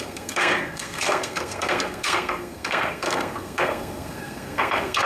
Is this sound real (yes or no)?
no